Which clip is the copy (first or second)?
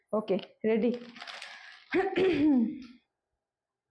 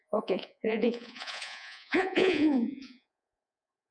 second